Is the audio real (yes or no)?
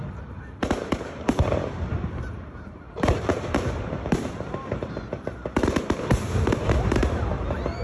no